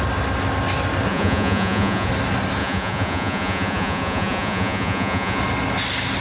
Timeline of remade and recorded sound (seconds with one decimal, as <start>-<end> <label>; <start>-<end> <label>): 0.0-1.1 recorded; 1.1-2.1 remade; 2.1-2.6 recorded; 2.6-5.4 remade; 5.4-6.2 recorded